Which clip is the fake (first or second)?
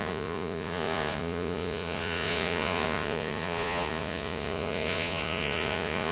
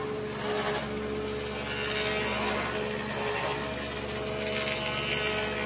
first